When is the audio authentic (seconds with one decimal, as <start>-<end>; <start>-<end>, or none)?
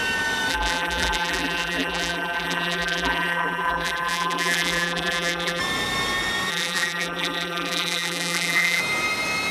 0.0-0.5; 5.6-6.5; 8.8-9.5